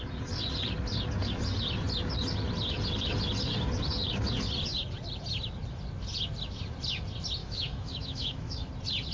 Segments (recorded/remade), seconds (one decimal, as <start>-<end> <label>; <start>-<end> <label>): 0.0-7.4 recorded; 7.4-8.7 remade; 8.7-9.1 recorded